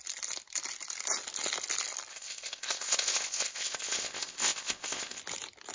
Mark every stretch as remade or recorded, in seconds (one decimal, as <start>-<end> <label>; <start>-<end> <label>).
0.0-2.1 recorded; 2.1-5.2 remade; 5.2-5.7 recorded